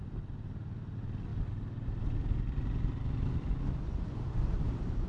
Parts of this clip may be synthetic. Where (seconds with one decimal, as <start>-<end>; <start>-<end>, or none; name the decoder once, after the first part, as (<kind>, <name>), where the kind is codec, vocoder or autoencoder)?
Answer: 1.3-3.5 (vocoder, BigVGAN v2)